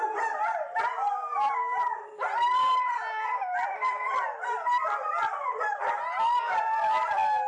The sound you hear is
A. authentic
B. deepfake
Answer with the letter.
B